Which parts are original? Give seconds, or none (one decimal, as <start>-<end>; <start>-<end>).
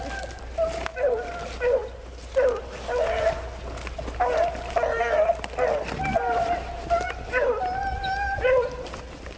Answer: 0.0-9.4